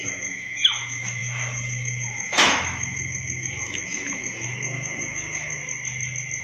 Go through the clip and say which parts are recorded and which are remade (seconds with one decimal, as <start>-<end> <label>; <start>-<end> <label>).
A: 0.0-5.6 remade; 5.6-6.4 recorded